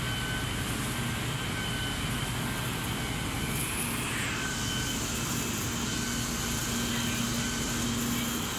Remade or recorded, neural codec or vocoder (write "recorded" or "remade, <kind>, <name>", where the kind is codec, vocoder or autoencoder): recorded